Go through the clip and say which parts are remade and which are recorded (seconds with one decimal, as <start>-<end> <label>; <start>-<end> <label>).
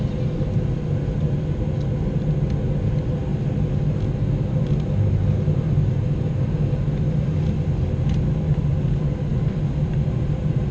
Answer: 0.0-10.7 recorded